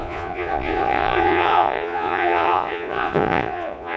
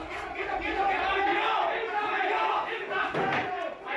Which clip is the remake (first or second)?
first